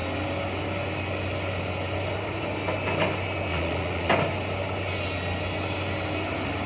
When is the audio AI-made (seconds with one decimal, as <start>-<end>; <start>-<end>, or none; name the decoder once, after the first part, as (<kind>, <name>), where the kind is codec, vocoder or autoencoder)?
3.5-4.1 (vocoder, Vocos)